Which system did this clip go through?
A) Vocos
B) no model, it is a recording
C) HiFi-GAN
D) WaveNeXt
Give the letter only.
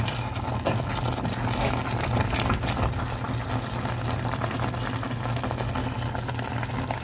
B